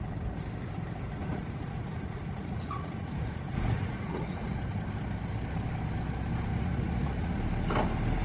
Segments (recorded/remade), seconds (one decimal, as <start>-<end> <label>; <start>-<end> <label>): 0.0-1.2 recorded; 1.2-4.8 remade; 4.8-6.5 recorded; 6.5-7.4 remade; 7.4-8.2 recorded